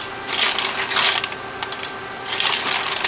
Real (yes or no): yes